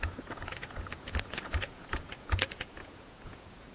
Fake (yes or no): yes